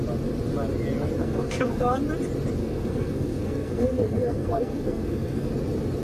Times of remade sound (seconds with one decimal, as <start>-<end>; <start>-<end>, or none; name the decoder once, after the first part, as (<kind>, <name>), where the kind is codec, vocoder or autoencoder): 1.2-2.0 (codec, SNAC); 2.6-5.5